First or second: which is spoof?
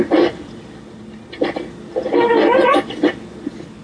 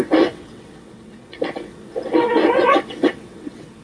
second